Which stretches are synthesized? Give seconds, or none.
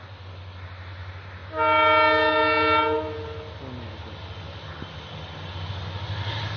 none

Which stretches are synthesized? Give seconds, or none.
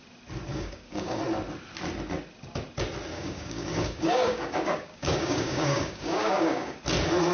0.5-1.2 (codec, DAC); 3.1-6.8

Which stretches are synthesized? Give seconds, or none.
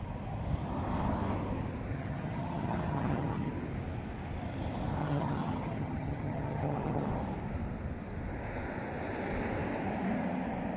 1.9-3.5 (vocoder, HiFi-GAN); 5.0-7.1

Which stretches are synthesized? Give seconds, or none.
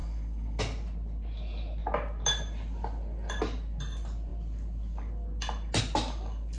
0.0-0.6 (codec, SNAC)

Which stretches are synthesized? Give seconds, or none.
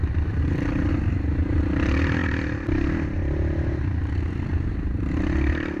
0.0-0.9 (vocoder, BigVGAN v2)